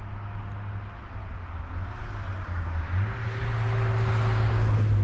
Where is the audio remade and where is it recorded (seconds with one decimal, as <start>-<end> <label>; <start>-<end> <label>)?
0.0-5.0 recorded